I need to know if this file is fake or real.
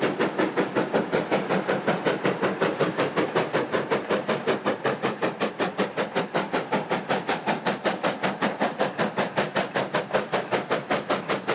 real